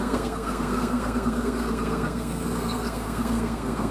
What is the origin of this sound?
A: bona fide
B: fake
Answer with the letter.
B